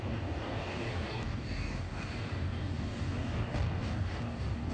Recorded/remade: remade